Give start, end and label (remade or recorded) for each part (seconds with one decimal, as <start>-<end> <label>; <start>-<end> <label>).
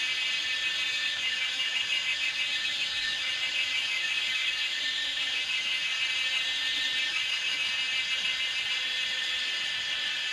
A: 0.0-0.9 recorded; 0.9-5.9 remade; 5.9-7.1 recorded; 7.1-7.7 remade; 7.7-10.3 recorded